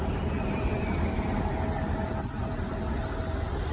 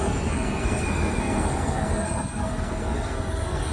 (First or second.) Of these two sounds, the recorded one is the first